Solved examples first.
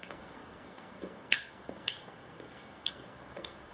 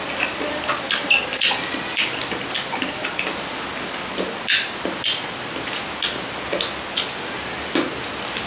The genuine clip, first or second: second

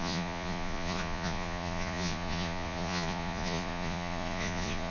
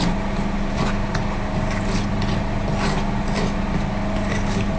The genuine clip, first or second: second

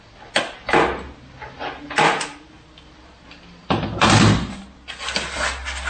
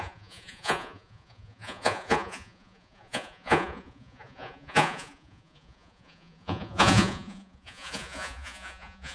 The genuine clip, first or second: first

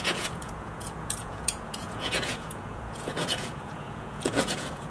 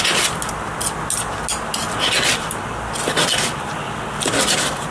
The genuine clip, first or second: second